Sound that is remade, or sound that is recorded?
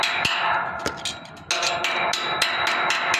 recorded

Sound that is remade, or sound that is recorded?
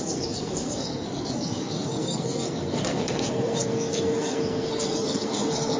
remade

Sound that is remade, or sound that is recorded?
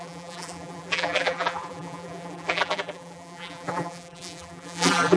remade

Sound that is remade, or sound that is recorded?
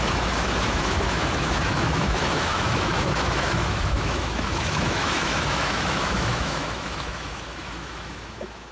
remade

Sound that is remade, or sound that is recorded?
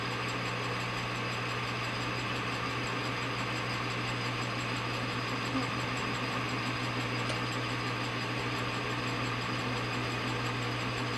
recorded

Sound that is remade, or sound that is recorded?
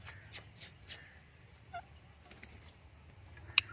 recorded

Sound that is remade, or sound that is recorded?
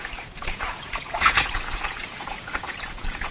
remade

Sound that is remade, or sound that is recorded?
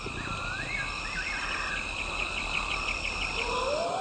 recorded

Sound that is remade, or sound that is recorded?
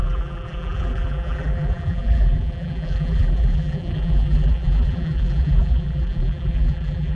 remade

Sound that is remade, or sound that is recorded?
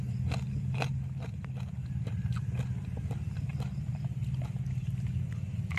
recorded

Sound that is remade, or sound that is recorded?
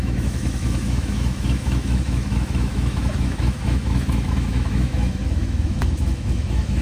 remade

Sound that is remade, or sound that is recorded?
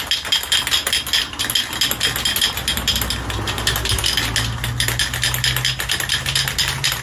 recorded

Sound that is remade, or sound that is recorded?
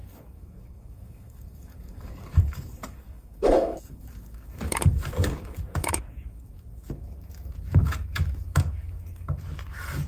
remade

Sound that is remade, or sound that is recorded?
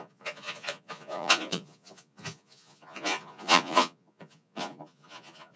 remade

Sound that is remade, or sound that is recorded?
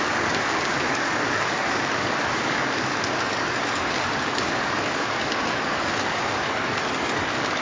remade